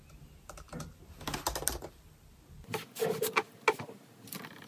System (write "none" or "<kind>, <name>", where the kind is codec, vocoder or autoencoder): none